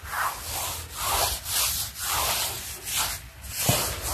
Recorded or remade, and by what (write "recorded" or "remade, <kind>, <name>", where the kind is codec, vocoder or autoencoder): recorded